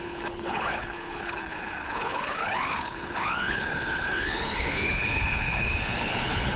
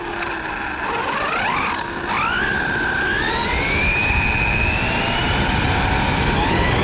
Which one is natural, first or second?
second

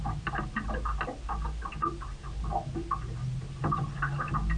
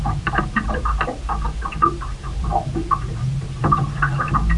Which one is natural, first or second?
first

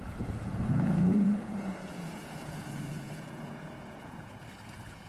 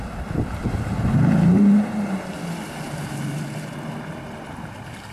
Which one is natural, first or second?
second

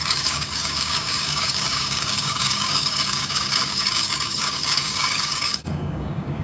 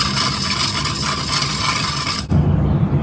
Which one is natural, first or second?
second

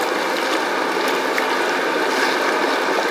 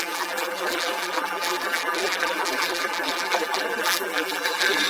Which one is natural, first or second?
first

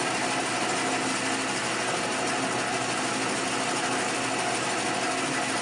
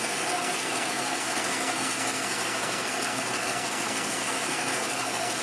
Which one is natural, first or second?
first